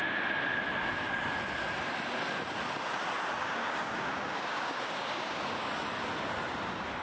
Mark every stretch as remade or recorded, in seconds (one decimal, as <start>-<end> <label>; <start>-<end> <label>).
0.0-3.4 recorded; 3.4-5.7 remade; 5.7-7.0 recorded